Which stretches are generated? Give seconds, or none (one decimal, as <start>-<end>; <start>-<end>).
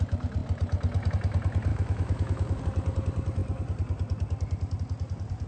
1.7-2.6